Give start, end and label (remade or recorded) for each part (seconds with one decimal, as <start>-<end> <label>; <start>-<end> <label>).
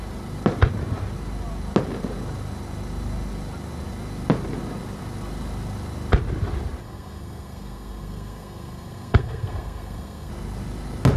0.0-6.8 recorded; 6.8-10.3 remade; 10.3-11.2 recorded